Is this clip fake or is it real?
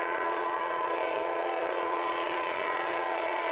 fake